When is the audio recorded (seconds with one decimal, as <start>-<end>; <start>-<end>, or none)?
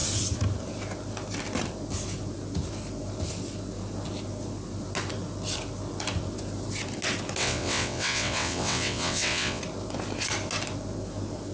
0.0-7.4; 9.6-11.5